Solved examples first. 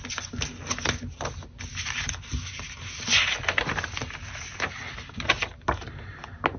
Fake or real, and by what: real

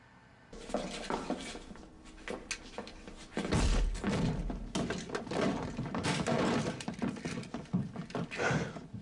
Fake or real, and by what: real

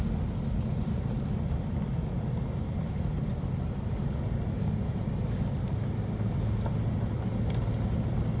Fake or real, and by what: real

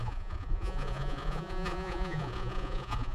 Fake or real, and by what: fake, vocoder, Vocos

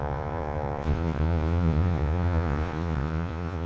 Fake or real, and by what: fake, vocoder, Vocos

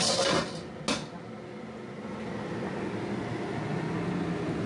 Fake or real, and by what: real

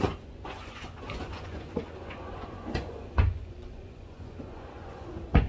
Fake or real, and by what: fake, vocoder, Vocos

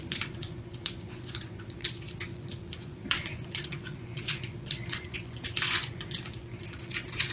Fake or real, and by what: fake, vocoder, Vocos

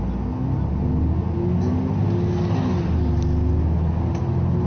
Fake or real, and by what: real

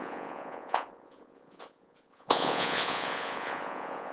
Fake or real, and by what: fake, vocoder, Vocos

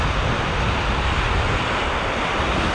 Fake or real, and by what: real